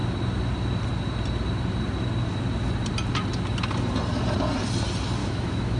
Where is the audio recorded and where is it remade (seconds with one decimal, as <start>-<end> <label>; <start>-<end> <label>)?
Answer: 0.0-5.2 recorded; 5.2-5.8 remade